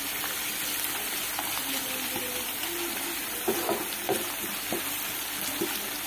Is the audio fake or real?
real